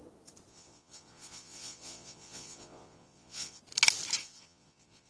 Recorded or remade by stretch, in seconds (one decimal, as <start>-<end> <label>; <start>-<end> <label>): 0.0-0.5 recorded; 0.5-3.6 remade; 3.6-4.2 recorded; 4.2-5.1 remade